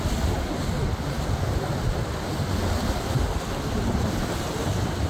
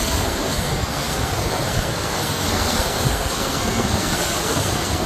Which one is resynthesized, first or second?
second